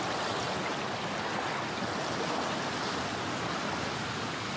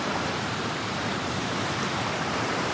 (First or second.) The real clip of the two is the first